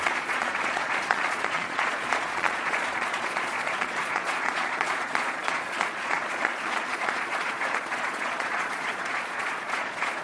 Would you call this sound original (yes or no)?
no